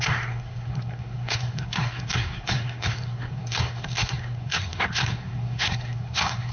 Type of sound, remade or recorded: remade